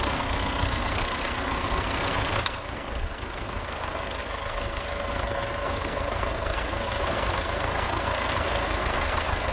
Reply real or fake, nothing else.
fake